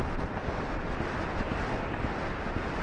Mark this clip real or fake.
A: real